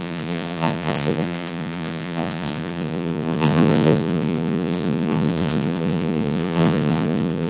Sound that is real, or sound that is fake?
fake